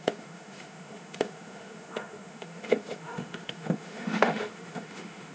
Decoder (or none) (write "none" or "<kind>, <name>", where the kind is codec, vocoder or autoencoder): autoencoder, DAC-VAE